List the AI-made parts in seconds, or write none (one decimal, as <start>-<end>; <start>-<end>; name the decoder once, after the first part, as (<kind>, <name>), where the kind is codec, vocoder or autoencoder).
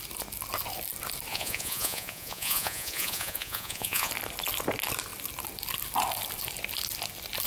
1.3-4.1 (vocoder, Vocos)